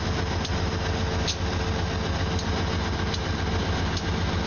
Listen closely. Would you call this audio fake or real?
real